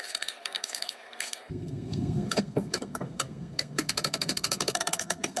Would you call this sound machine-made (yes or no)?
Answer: yes